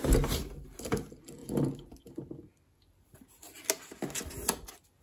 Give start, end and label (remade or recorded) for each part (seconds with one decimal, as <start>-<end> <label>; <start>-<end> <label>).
0.0-5.0 recorded